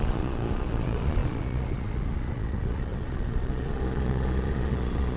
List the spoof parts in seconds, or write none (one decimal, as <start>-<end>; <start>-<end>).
0.0-5.2